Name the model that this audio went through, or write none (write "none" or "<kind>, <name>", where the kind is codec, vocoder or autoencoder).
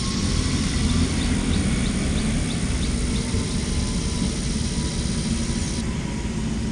none